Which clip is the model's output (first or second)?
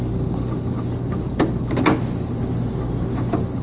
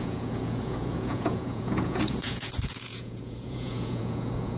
second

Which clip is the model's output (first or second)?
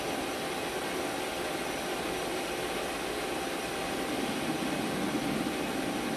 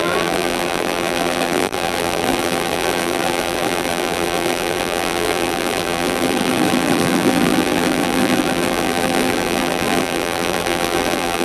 second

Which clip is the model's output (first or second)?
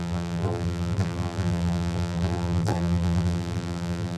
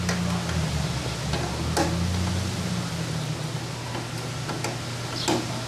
first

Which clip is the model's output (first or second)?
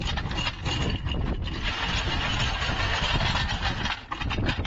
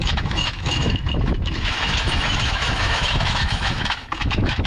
second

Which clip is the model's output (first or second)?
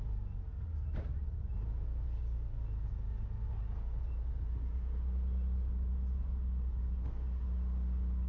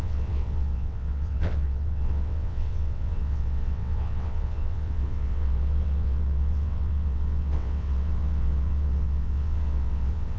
second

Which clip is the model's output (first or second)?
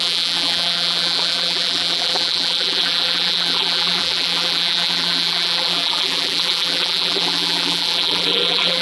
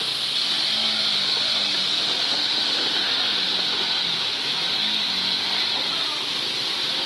first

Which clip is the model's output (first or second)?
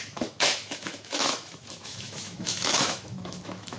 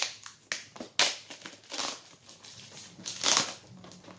first